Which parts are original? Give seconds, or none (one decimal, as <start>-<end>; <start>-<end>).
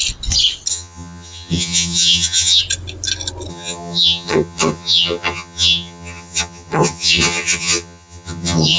0.0-0.7; 2.6-3.5